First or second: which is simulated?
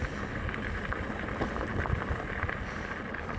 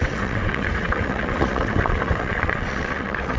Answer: second